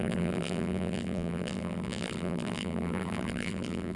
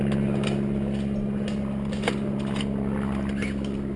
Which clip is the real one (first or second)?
second